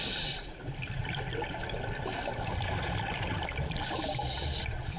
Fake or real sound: real